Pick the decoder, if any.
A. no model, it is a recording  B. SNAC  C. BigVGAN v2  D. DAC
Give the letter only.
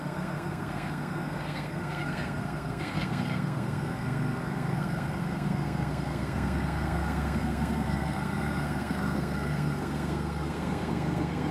B